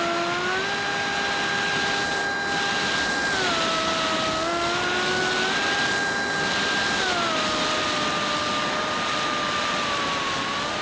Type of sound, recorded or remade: recorded